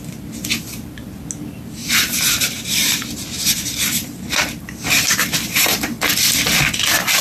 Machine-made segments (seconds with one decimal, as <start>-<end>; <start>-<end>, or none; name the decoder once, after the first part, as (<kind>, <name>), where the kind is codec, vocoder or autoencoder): 1.8-6.0 (vocoder, BigVGAN v2)